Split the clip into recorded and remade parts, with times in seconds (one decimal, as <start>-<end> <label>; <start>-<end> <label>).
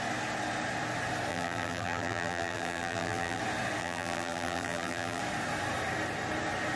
0.0-1.3 recorded; 1.3-3.4 remade; 3.4-3.8 recorded; 3.8-5.2 remade; 5.2-6.8 recorded